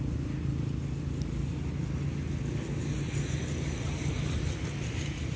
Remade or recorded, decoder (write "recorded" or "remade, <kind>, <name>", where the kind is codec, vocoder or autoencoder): recorded